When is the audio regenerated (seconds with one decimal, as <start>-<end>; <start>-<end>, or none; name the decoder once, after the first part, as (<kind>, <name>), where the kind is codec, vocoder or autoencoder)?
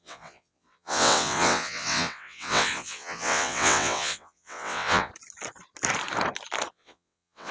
0.0-5.1 (vocoder, WaveNeXt); 6.7-7.5